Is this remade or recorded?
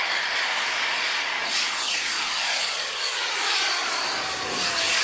remade